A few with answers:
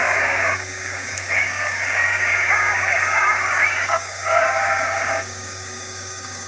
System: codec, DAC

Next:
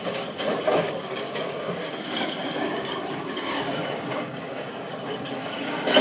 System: codec, DAC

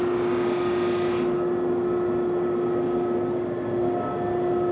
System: none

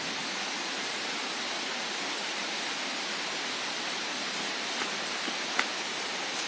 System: none